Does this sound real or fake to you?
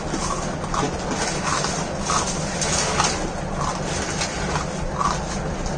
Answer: real